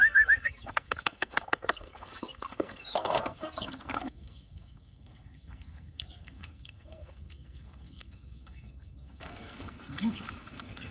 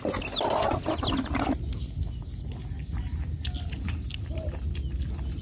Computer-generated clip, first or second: first